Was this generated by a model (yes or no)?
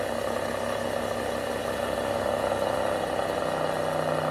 no